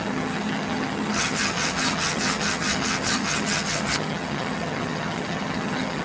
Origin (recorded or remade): remade